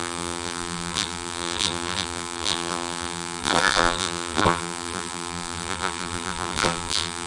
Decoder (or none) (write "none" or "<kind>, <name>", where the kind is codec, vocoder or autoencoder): vocoder, BigVGAN v2